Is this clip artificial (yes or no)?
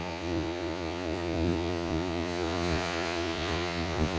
yes